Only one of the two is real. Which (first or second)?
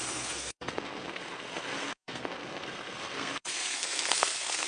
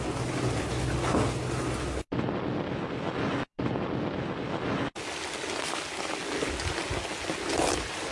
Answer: second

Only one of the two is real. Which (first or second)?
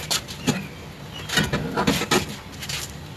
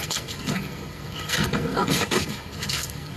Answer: first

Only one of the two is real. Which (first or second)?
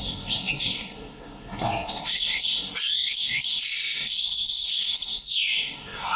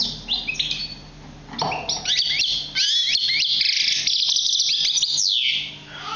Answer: second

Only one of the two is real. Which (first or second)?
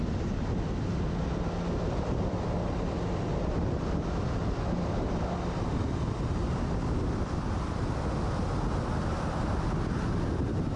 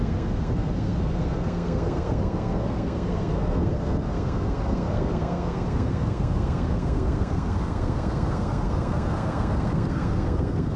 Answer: first